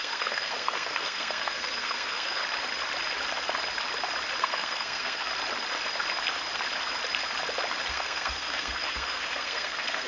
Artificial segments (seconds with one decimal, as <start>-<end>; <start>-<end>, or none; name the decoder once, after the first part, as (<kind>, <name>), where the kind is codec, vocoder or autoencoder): 0.0-2.4 (codec, SNAC); 4.4-5.3; 7.9-10.1